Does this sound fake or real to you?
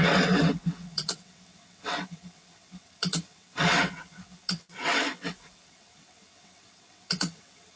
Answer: fake